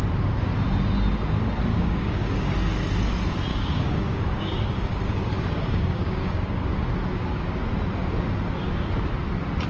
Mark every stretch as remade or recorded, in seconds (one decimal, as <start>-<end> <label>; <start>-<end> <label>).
0.0-1.7 recorded; 1.7-2.5 remade; 2.5-3.5 recorded; 3.5-6.8 remade; 6.8-9.7 recorded